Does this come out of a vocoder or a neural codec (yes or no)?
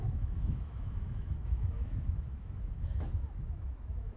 yes